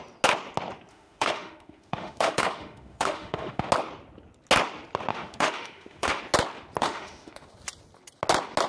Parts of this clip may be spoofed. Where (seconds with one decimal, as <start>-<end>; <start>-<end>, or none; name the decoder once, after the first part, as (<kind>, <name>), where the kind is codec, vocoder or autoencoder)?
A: 0.9-3.7 (autoencoder, DAC-VAE); 5.1-6.2; 6.8-7.5